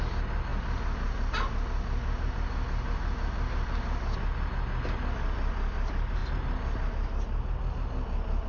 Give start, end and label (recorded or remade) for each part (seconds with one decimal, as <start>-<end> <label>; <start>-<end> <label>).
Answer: 0.0-8.5 recorded